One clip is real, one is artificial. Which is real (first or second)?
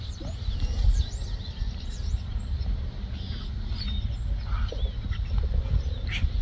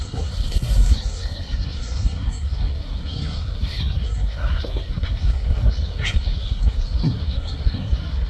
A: first